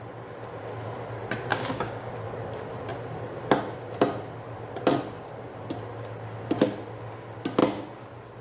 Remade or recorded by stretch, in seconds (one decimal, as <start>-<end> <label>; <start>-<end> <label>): 0.0-1.5 recorded; 1.5-2.1 remade; 2.1-8.4 recorded